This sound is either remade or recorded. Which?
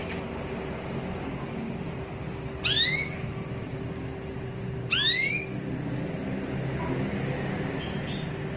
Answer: recorded